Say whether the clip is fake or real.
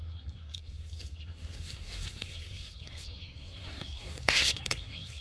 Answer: fake